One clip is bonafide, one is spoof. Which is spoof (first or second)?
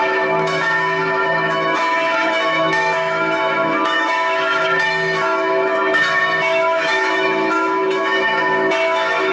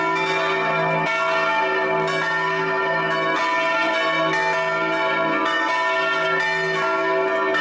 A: first